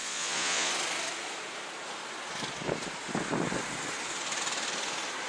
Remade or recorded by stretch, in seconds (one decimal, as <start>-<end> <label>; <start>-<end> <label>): 0.0-0.7 remade; 0.7-5.3 recorded

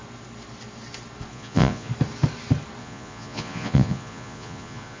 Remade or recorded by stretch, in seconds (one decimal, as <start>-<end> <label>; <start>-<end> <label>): 0.0-1.3 recorded; 1.3-1.9 remade; 1.9-2.8 recorded; 2.8-5.0 remade

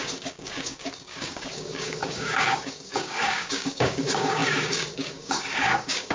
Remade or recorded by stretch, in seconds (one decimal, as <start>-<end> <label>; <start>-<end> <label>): 0.0-6.1 remade

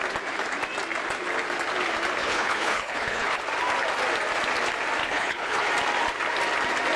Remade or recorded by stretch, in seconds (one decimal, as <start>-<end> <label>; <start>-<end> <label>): 0.0-2.2 recorded; 2.2-3.4 remade; 3.4-5.0 recorded; 5.0-5.7 remade; 5.7-7.0 recorded

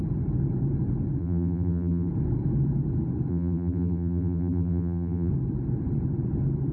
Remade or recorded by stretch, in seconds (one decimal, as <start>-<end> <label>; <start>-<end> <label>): 0.0-1.2 recorded; 1.2-2.1 remade; 2.1-3.3 recorded; 3.3-5.3 remade; 5.3-6.7 recorded

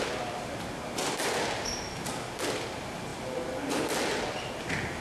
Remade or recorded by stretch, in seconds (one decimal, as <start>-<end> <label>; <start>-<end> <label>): 0.0-5.0 recorded